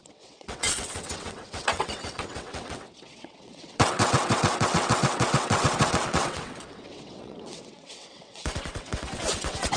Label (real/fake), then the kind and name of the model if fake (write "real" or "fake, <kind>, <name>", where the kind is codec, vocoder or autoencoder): fake, vocoder, WaveNeXt